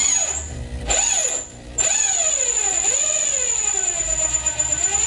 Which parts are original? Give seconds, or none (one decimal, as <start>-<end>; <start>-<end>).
0.0-5.1